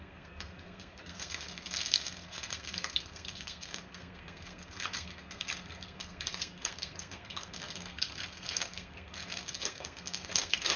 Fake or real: fake